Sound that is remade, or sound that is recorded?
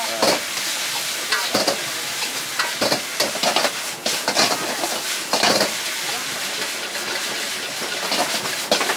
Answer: recorded